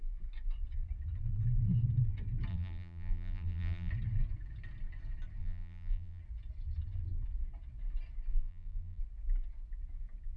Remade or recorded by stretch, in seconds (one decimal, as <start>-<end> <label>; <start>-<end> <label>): 0.0-2.5 recorded; 2.5-3.9 remade; 3.9-5.4 recorded; 5.4-6.2 remade; 6.2-8.3 recorded; 8.3-9.0 remade; 9.0-10.4 recorded